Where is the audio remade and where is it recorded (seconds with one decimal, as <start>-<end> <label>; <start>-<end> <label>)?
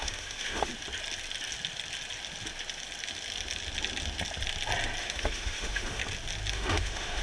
0.0-0.7 remade; 0.7-5.0 recorded; 5.0-6.0 remade; 6.0-6.5 recorded; 6.5-7.2 remade